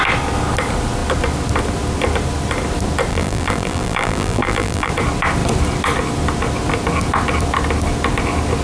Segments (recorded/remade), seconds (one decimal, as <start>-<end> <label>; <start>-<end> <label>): 0.0-3.1 recorded; 3.1-4.9 remade; 4.9-8.6 recorded